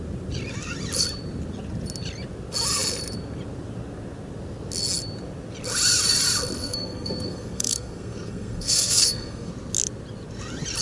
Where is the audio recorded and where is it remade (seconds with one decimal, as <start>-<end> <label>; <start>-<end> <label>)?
0.0-6.6 recorded; 6.6-9.5 remade; 9.5-10.8 recorded